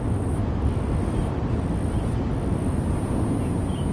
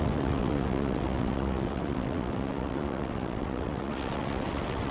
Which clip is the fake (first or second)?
second